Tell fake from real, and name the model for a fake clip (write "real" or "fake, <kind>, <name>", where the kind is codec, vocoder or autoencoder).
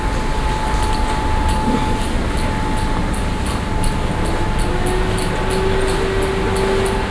real